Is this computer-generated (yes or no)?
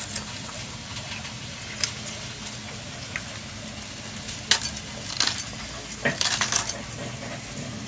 no